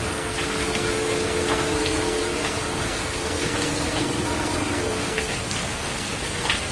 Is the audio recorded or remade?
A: remade